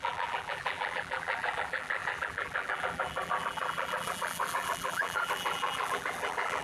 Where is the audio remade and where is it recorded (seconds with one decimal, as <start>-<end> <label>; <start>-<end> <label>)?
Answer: 0.0-6.6 remade